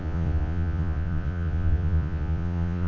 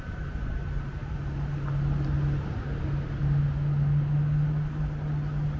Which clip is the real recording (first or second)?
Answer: second